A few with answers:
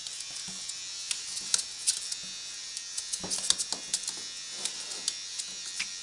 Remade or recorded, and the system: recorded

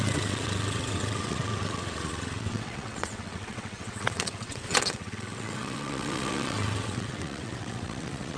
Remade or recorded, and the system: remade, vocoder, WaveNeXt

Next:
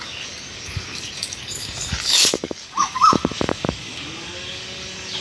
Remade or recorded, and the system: remade, codec, DAC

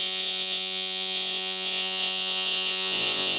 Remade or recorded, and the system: remade, vocoder, Vocos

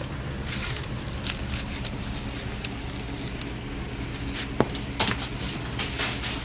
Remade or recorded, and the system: recorded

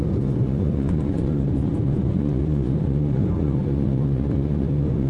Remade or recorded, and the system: remade, vocoder, Vocos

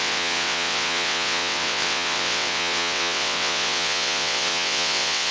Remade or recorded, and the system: remade, vocoder, WaveNeXt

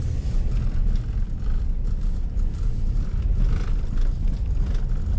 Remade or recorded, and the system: recorded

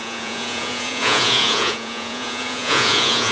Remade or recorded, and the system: remade, vocoder, Vocos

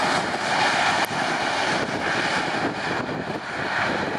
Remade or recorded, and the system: recorded